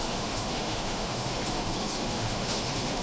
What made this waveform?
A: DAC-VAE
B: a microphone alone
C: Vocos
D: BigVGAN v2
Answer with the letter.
A